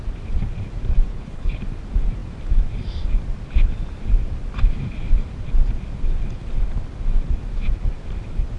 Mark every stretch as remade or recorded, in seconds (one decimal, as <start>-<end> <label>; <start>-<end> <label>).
0.0-1.1 recorded; 1.1-1.6 remade; 1.6-8.6 recorded